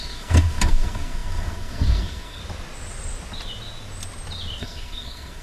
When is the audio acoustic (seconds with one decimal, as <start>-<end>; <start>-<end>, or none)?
2.4-4.6